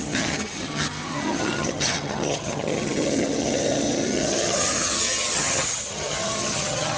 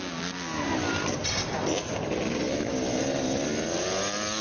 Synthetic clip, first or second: first